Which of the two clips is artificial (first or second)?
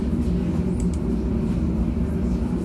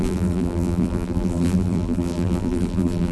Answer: second